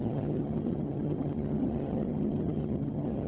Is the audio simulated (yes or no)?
yes